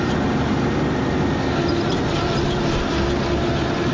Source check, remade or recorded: recorded